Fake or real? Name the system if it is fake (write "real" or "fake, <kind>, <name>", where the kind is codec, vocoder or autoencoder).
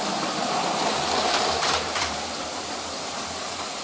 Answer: fake, vocoder, BigVGAN v2